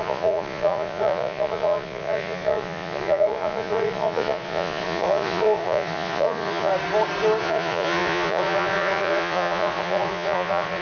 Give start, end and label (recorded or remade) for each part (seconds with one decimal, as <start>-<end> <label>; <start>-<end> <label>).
0.0-6.7 remade; 6.7-7.4 recorded; 7.4-10.8 remade